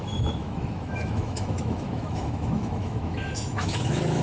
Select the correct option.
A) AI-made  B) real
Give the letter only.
A